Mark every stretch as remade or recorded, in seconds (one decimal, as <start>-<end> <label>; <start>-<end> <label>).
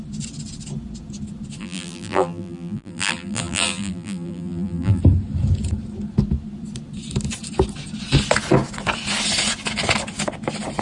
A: 0.0-1.6 recorded; 1.6-5.0 remade; 5.0-10.8 recorded